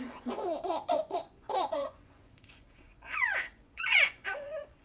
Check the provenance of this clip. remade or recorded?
remade